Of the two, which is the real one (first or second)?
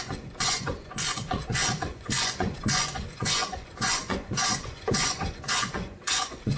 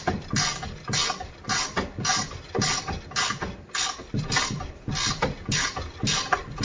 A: second